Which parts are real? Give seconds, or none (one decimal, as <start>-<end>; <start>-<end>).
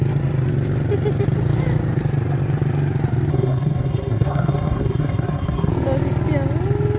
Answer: 0.0-3.3; 5.7-7.0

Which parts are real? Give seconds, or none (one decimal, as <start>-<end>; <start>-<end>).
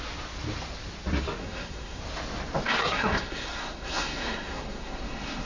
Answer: 0.0-1.4; 2.0-2.8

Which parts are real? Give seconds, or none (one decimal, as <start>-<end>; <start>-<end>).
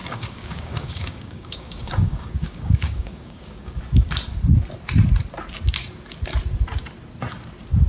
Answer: 3.8-7.9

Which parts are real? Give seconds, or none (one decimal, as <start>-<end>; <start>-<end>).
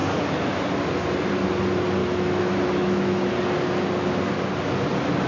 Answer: 0.0-2.0; 3.3-5.3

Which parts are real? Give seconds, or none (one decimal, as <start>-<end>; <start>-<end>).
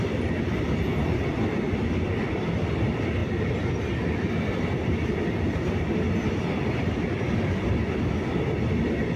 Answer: 0.0-9.2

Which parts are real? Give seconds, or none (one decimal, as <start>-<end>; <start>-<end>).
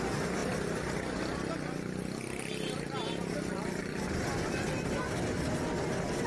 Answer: 0.0-6.3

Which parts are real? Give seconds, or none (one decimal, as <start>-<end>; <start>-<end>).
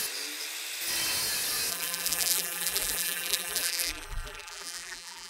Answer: 0.0-1.7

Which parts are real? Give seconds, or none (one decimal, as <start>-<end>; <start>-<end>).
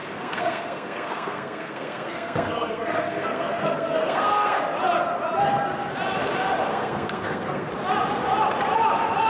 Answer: 4.6-6.7; 7.7-9.3